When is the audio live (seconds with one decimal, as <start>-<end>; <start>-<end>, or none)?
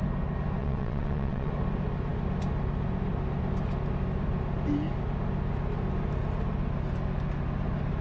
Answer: 0.0-0.6; 1.5-8.0